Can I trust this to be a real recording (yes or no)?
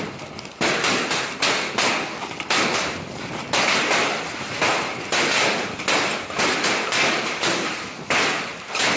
yes